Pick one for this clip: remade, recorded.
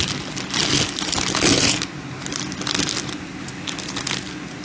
recorded